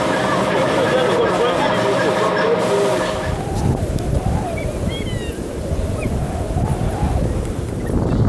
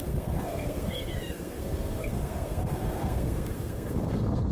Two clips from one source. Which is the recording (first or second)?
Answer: first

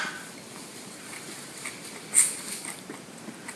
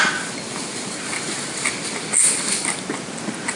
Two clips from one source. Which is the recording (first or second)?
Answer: second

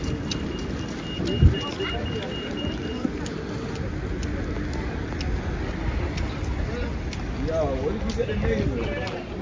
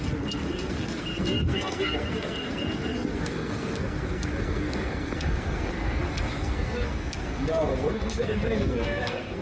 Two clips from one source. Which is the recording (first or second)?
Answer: first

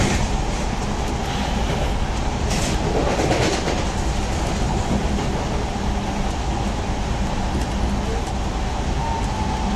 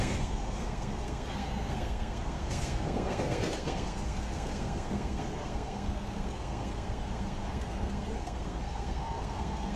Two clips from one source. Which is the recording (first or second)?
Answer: first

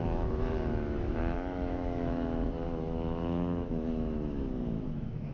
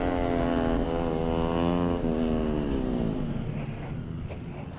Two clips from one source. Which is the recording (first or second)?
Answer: second